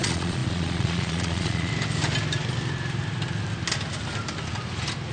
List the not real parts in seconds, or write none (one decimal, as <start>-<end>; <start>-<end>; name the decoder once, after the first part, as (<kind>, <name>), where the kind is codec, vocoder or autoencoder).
0.0-1.7 (vocoder, Vocos)